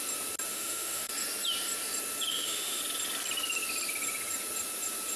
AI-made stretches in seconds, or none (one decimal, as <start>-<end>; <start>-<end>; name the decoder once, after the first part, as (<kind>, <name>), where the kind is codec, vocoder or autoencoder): 0.5-1.1 (autoencoder, DAC-VAE); 2.3-2.8